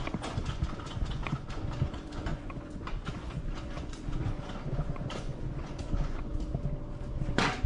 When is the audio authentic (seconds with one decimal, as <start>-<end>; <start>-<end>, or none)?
6.3-7.3